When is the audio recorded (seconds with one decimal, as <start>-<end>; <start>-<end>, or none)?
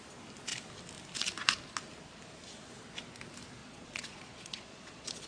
0.0-3.6